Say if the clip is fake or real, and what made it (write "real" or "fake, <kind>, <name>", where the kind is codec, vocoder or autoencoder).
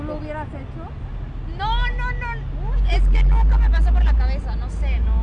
real